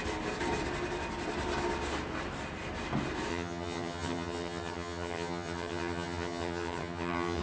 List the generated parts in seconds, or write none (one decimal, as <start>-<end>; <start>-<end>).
3.3-7.4